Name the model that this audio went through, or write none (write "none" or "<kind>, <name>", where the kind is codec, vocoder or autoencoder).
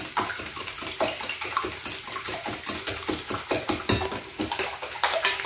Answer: none